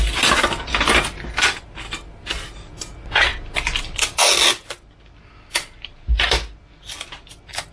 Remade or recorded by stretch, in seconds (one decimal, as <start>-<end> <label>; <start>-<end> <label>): 0.0-7.7 recorded